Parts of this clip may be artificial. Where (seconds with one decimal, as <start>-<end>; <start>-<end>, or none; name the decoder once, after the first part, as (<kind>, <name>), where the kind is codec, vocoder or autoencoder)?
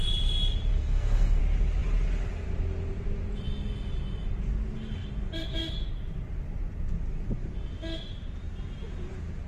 0.7-1.4 (codec, SNAC)